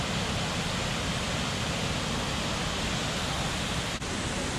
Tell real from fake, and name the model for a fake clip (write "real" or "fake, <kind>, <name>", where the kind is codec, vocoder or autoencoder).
real